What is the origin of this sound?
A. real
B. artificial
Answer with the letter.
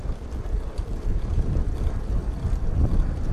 A